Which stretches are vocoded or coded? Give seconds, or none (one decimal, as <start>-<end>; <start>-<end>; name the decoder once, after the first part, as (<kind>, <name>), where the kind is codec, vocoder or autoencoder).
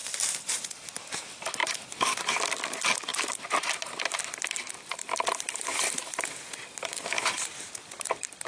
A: 0.0-0.8 (vocoder, BigVGAN v2); 1.6-2.2; 3.1-7.7